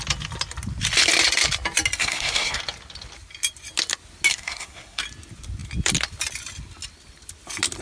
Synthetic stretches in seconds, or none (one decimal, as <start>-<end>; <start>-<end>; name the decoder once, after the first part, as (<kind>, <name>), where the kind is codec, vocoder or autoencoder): 2.0-2.6 (codec, SNAC); 4.3-5.0